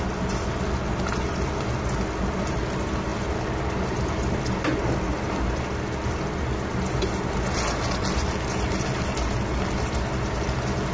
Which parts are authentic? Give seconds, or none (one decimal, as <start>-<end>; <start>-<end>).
0.0-10.9